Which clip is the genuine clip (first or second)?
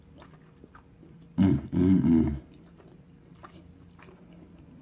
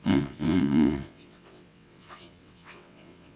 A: first